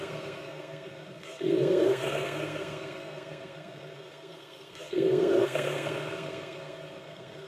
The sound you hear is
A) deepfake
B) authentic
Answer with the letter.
A